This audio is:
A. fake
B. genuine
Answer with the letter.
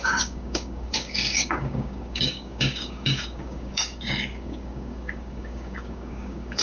A